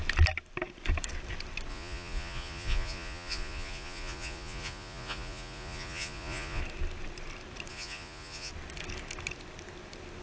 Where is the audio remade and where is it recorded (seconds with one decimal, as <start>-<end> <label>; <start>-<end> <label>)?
0.0-1.7 recorded; 1.7-6.6 remade; 6.6-7.7 recorded; 7.7-8.5 remade; 8.5-10.2 recorded